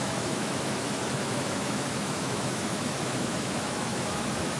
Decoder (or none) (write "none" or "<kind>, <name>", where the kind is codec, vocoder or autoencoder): autoencoder, DAC-VAE